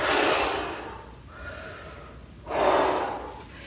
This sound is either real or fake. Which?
real